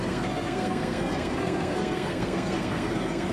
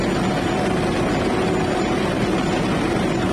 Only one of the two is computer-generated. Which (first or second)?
first